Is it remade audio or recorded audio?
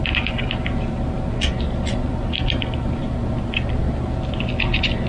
recorded